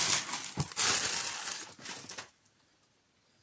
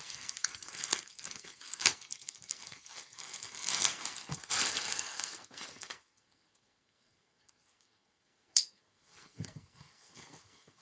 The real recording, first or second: first